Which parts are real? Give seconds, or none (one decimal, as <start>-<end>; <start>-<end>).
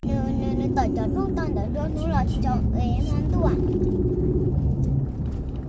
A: 0.0-5.7